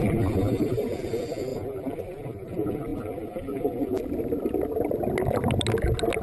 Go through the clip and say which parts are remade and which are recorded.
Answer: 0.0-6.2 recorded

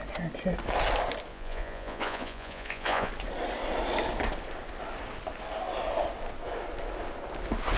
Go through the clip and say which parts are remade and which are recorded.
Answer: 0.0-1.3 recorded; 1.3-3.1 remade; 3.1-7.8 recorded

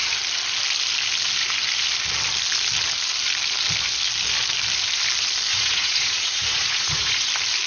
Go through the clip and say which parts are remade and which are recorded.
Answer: 0.0-5.5 recorded; 5.5-7.3 remade; 7.3-7.7 recorded

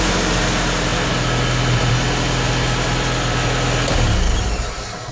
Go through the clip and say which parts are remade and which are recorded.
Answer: 0.0-5.1 recorded

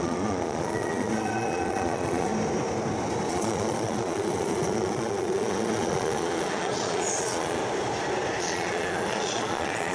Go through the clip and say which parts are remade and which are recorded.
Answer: 0.0-2.3 remade; 2.3-3.3 recorded; 3.3-7.6 remade; 7.6-8.4 recorded; 8.4-9.9 remade